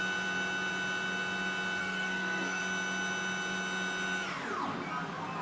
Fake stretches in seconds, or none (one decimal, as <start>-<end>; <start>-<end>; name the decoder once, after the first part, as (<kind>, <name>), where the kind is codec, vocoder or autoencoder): 1.8-2.6 (codec, SNAC)